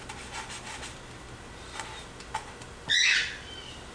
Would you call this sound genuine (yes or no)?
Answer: yes